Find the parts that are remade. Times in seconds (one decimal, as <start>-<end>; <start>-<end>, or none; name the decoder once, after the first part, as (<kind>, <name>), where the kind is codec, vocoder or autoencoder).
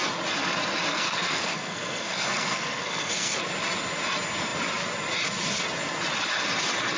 0.9-3.4 (codec, SNAC)